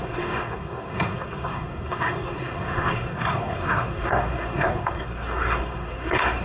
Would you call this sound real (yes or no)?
no